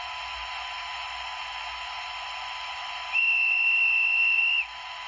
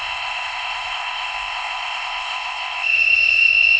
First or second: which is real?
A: first